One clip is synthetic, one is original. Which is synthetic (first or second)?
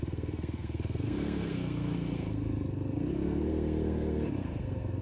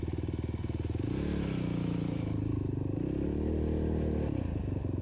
first